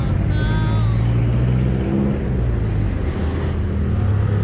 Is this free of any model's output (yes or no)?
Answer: yes